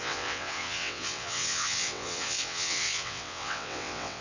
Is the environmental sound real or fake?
fake